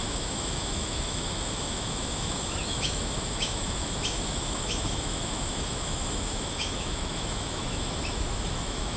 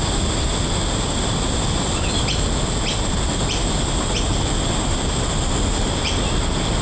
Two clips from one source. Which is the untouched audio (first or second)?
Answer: second